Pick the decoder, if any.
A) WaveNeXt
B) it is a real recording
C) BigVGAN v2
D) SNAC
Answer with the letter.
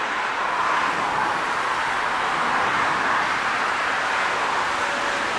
B